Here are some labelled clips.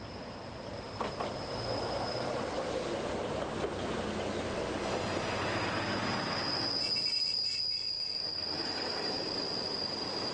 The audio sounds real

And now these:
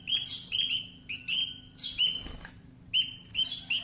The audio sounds real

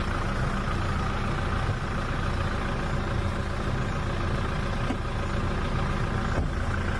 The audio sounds real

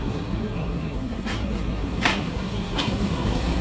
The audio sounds fake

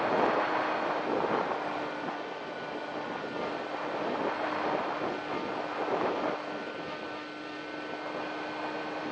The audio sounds real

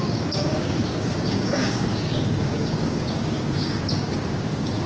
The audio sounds fake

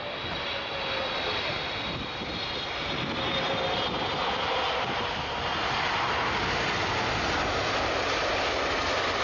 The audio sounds real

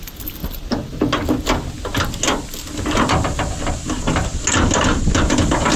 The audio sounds real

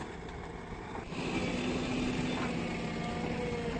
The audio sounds real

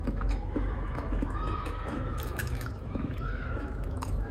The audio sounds fake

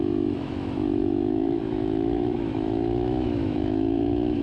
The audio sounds fake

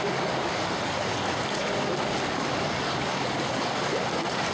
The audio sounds fake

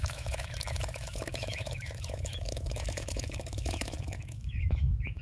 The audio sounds fake